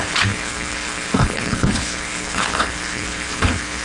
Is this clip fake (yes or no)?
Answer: yes